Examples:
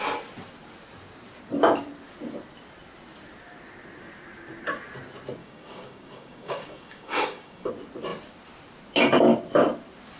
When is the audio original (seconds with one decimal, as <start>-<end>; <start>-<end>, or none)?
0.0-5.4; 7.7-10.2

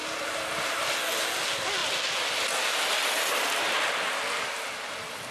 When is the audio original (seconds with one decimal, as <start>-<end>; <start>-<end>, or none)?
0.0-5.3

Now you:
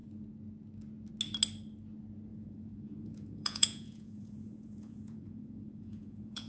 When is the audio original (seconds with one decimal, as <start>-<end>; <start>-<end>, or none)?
0.0-2.3

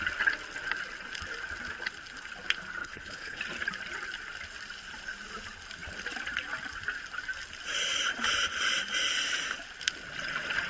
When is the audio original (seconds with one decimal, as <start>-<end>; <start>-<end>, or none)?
0.0-2.8; 3.4-10.7

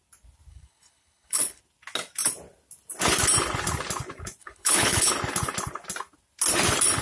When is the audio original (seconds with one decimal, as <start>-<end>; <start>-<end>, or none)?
0.0-0.5; 1.6-4.4; 5.1-7.0

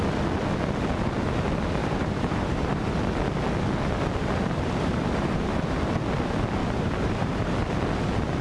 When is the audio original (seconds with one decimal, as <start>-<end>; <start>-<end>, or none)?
0.0-1.8; 3.1-4.2; 5.8-6.6; 7.5-8.4

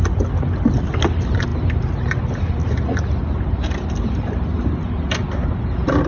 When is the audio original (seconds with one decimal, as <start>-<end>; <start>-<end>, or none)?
0.0-6.1

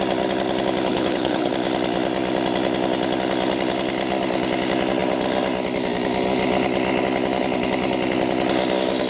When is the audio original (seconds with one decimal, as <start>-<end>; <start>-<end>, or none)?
0.0-0.9; 1.5-9.1